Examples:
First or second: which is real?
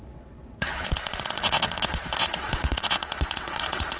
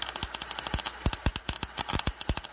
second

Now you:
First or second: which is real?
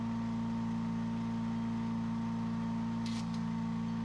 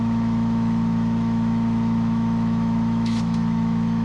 first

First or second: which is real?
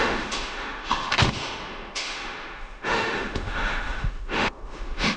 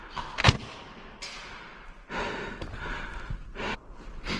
second